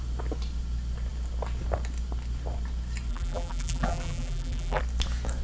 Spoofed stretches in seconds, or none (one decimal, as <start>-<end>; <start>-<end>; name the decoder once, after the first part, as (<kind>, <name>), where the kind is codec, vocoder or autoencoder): 3.1-4.8 (vocoder, BigVGAN v2)